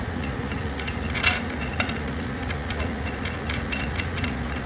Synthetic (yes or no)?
yes